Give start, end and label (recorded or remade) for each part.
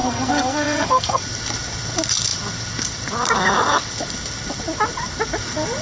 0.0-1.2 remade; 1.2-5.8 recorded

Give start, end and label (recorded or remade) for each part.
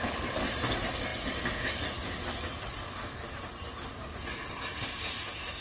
0.0-5.6 recorded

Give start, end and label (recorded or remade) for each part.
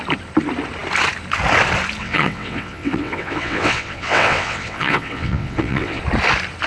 0.0-2.0 recorded; 2.0-6.0 remade; 6.0-6.7 recorded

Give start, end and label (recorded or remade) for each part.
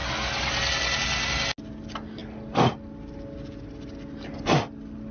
0.0-5.1 recorded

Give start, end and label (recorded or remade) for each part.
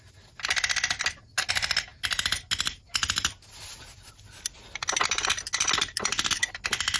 0.0-7.0 recorded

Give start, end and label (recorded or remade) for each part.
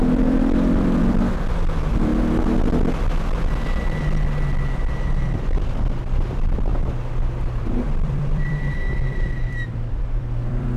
0.0-2.1 remade; 2.1-4.7 recorded; 4.7-6.7 remade; 6.7-7.3 recorded; 7.3-10.8 remade